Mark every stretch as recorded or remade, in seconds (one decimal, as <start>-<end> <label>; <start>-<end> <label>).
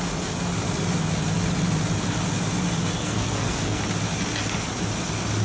0.0-3.0 recorded; 3.0-3.8 remade; 3.8-5.4 recorded